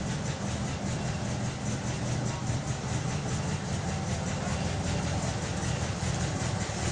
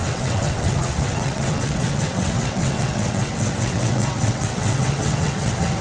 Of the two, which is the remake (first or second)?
second